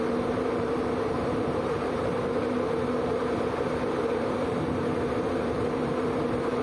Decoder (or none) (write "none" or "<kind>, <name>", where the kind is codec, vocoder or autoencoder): vocoder, BigVGAN v2